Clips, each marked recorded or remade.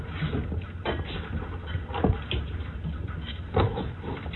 recorded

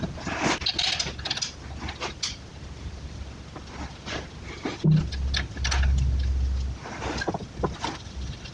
recorded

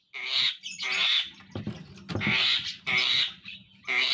recorded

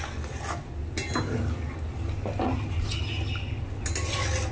recorded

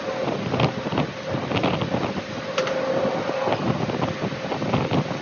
recorded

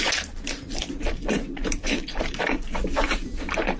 remade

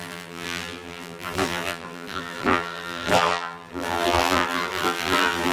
remade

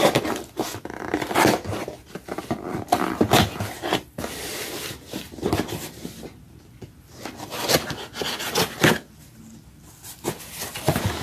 recorded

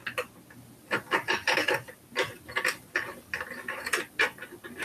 recorded